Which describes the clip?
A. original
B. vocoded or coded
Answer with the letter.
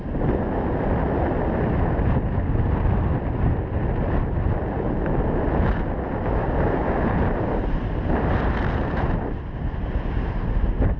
A